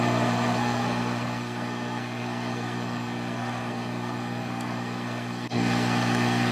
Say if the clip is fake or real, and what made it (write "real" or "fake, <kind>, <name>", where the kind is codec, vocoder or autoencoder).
fake, codec, SNAC